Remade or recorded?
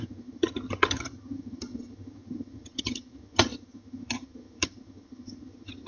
remade